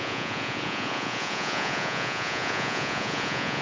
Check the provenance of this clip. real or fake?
fake